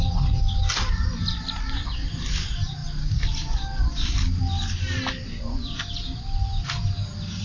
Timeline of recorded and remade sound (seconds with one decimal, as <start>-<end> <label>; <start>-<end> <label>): 0.0-7.4 recorded